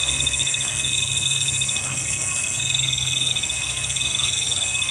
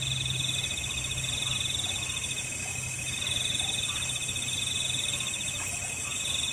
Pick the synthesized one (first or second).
first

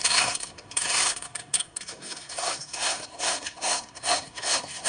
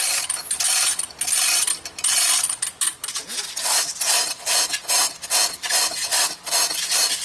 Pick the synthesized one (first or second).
first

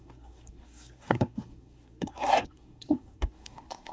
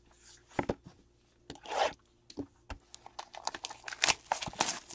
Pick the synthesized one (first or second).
first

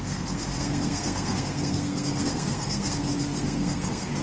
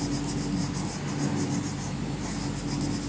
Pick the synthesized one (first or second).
first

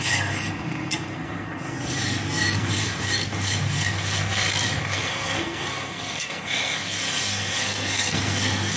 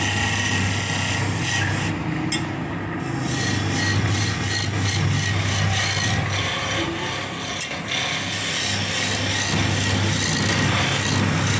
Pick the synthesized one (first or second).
first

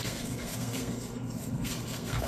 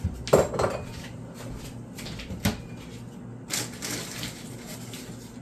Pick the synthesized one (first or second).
first